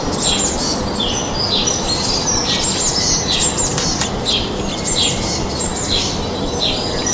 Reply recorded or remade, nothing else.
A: recorded